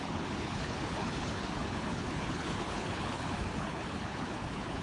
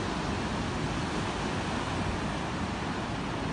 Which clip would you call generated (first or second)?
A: first